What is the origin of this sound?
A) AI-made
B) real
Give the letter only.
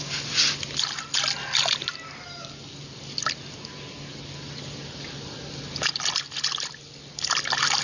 B